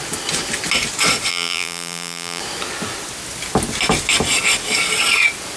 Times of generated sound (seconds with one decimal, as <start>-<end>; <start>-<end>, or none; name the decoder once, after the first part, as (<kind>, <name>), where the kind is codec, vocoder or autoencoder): 1.3-2.4 (vocoder, BigVGAN v2)

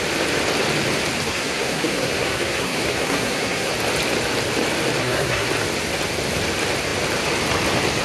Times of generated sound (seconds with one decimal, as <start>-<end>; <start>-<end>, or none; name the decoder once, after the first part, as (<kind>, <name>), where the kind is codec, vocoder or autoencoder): 1.3-3.7 (codec, SNAC); 5.0-5.5

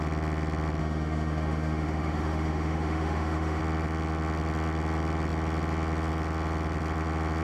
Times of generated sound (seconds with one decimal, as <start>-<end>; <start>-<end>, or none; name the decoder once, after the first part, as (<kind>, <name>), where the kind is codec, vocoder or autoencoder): 0.8-3.6 (autoencoder, DAC-VAE)